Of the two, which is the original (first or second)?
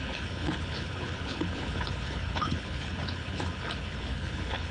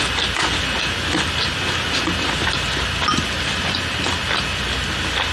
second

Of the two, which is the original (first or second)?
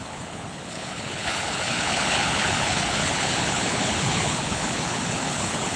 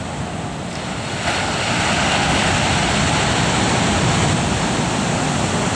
second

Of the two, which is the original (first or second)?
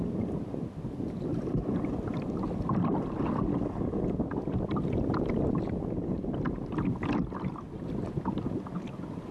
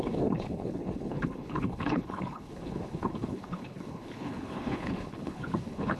first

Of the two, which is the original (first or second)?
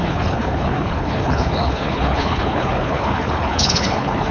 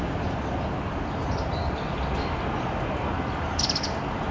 second